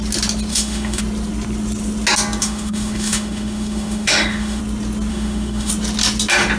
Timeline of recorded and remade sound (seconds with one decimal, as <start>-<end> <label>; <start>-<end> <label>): 0.0-0.5 recorded; 0.5-1.0 remade; 1.0-2.4 recorded; 2.4-4.6 remade; 4.6-5.1 recorded; 5.1-5.7 remade; 5.7-6.6 recorded